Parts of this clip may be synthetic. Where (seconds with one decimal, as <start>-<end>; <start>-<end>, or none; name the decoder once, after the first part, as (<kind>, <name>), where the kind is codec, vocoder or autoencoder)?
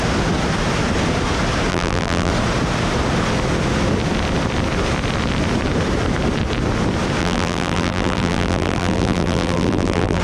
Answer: 1.7-2.3 (vocoder, BigVGAN v2); 7.2-10.2